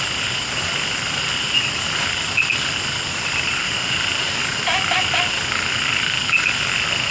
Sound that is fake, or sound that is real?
real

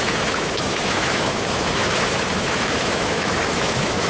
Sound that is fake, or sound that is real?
fake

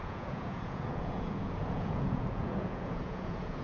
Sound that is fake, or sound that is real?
fake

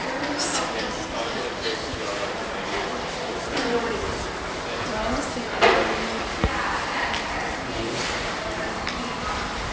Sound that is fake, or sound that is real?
real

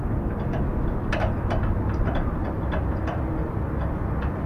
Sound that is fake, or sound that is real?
real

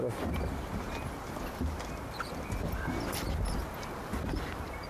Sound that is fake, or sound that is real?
real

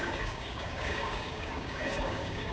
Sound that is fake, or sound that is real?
fake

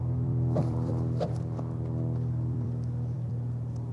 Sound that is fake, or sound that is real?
fake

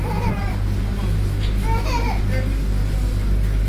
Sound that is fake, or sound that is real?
real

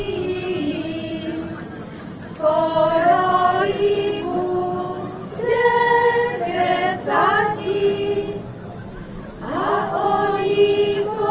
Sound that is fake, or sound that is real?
real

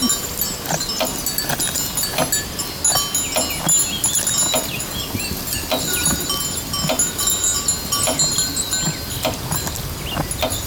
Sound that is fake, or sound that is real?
real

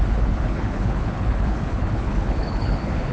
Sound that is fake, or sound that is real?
fake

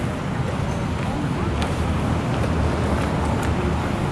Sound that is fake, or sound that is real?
real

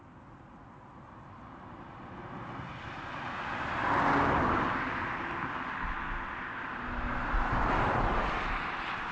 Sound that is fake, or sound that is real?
real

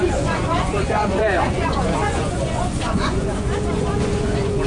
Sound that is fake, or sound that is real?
fake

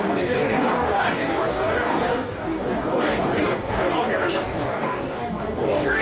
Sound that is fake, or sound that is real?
fake